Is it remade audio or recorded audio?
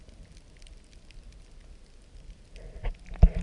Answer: recorded